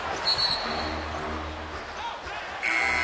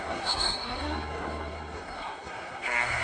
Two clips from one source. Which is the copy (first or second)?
second